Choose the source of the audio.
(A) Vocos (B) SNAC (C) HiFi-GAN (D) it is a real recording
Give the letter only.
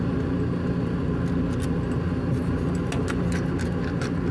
D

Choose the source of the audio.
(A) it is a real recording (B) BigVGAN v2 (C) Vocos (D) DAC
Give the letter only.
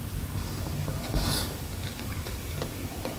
D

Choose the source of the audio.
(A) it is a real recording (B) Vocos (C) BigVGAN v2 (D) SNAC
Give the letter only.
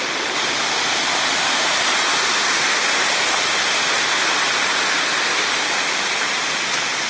A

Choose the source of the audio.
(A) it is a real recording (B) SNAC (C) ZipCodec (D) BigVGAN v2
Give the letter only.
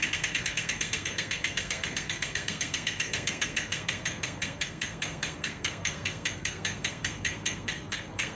B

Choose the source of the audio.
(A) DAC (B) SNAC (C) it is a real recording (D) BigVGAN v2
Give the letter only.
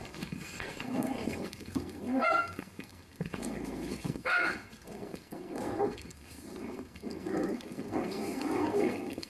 B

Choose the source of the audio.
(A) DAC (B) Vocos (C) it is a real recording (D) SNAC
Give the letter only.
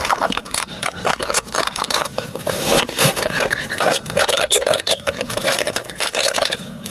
D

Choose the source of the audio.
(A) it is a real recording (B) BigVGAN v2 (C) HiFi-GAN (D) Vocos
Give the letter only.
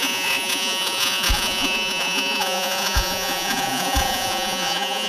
D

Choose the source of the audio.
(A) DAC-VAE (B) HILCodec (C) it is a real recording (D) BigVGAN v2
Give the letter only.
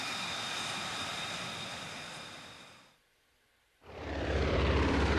D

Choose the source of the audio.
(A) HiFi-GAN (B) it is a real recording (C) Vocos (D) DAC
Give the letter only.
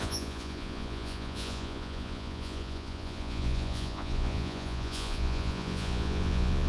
C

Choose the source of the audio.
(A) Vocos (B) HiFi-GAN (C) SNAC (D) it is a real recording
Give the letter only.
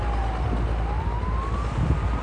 D